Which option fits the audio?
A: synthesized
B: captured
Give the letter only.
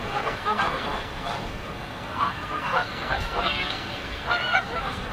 A